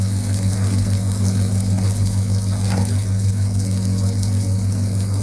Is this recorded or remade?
remade